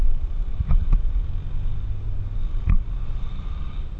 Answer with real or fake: real